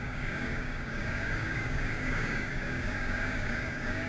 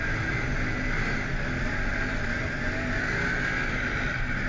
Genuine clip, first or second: second